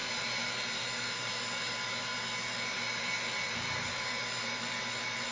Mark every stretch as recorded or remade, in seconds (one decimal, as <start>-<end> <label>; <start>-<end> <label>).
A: 0.0-5.3 recorded